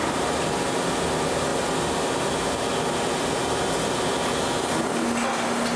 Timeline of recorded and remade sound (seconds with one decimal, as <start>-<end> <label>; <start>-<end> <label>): 0.0-5.8 recorded